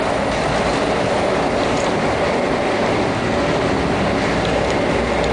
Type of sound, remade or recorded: recorded